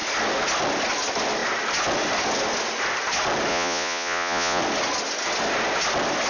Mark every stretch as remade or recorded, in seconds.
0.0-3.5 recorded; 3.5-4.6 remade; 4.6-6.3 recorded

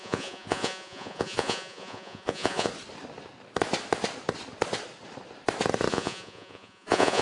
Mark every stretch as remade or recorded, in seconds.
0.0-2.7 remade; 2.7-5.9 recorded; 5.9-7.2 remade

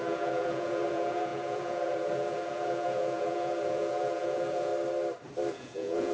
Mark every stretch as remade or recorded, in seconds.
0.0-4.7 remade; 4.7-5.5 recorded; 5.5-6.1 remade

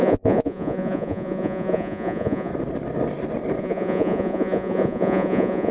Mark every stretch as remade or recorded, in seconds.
0.0-2.5 remade; 2.5-3.6 recorded; 3.6-5.7 remade

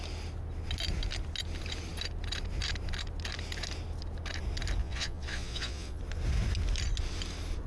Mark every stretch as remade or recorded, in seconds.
0.0-4.8 recorded; 4.8-6.0 remade; 6.0-7.7 recorded

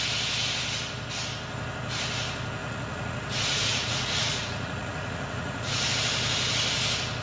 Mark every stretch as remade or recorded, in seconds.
0.0-2.6 recorded; 2.6-5.9 remade; 5.9-7.2 recorded

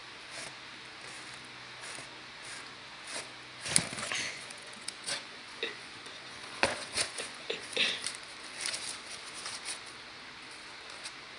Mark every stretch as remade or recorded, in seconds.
0.0-4.0 recorded; 4.0-8.0 remade; 8.0-11.4 recorded

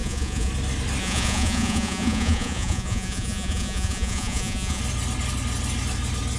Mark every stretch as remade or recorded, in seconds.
0.0-0.5 remade; 0.5-1.0 recorded; 1.0-4.8 remade; 4.8-6.4 recorded